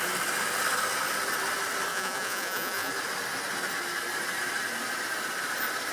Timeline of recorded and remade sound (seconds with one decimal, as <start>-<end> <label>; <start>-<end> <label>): 0.0-1.9 recorded; 1.9-2.9 remade; 2.9-5.9 recorded